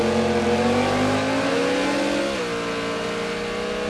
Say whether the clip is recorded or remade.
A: recorded